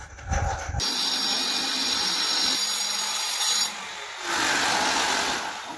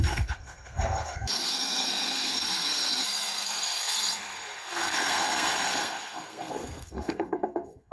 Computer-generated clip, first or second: second